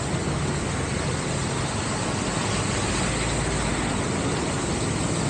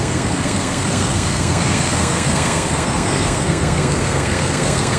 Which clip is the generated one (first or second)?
second